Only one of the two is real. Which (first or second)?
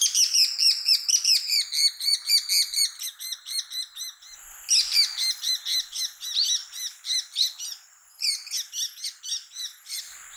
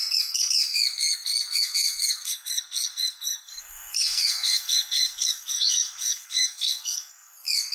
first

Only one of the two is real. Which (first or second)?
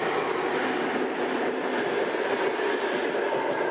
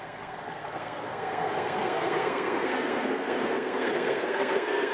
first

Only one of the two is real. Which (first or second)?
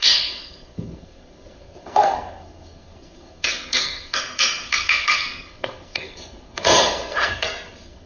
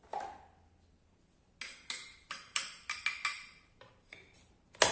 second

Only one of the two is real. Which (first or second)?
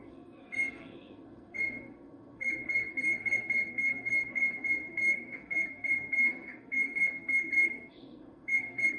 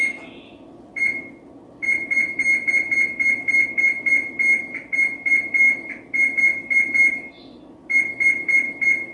second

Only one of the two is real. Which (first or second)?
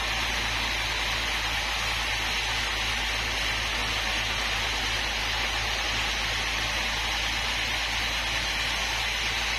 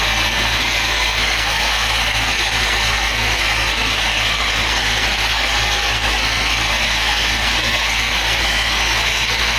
first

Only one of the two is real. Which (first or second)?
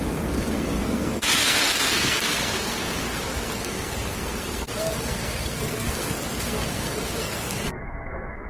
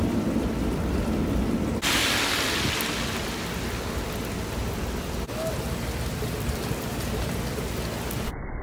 second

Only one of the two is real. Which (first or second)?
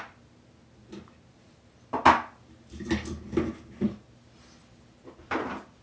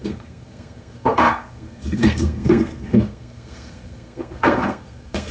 first